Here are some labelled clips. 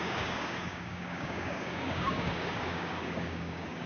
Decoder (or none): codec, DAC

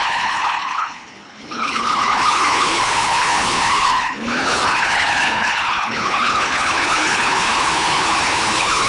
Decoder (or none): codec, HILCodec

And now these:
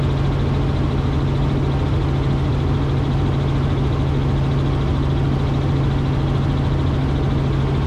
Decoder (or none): none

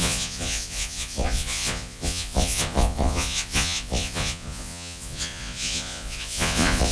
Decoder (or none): vocoder, Vocos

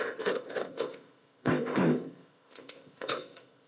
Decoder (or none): codec, ZipCodec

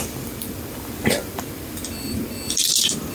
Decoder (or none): vocoder, BigVGAN v2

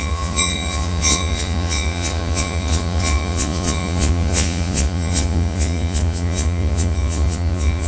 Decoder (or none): vocoder, Vocos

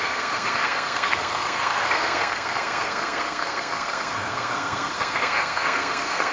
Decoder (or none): codec, SNAC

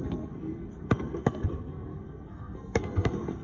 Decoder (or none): codec, SNAC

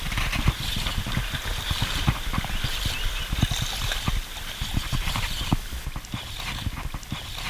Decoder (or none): vocoder, BigVGAN v2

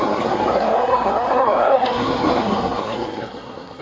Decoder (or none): codec, SNAC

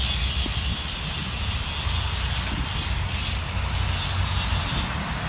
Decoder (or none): none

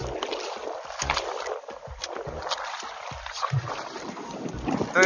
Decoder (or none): none